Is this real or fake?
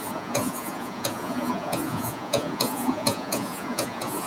fake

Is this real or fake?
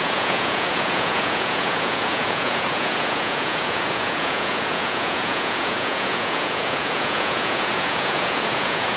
fake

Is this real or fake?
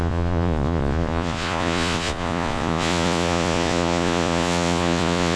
fake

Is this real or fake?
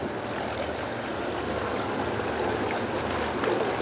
real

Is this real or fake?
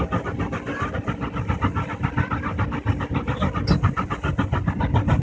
real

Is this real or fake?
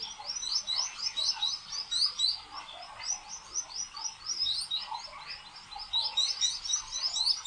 real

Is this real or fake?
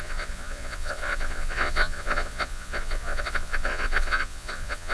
fake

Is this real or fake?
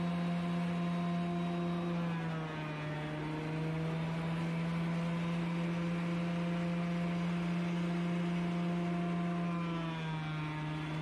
real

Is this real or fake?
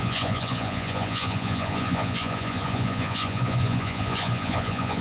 fake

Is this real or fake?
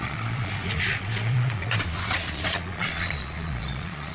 fake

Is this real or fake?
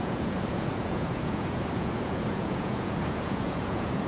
fake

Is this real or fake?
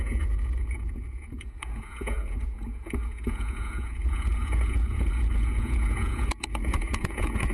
fake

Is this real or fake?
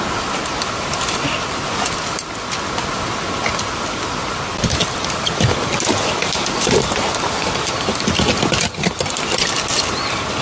real